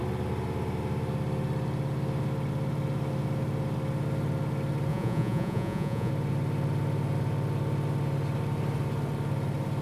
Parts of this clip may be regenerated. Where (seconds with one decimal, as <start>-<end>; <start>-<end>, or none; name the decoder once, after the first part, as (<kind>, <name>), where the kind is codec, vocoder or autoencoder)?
4.9-6.1 (vocoder, Vocos)